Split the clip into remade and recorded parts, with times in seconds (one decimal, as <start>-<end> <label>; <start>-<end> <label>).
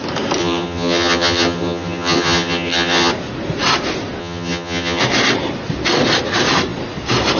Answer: 0.0-0.4 recorded; 0.4-3.1 remade; 3.1-4.2 recorded; 4.2-5.0 remade; 5.0-7.4 recorded